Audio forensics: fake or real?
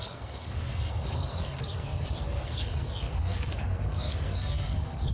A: fake